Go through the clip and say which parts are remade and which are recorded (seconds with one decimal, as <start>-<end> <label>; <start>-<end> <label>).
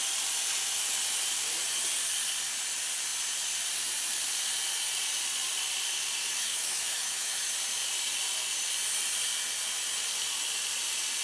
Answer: 0.0-6.4 recorded; 6.4-7.5 remade; 7.5-11.2 recorded